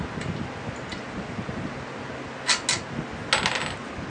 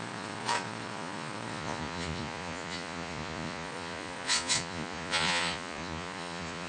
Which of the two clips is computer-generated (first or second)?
second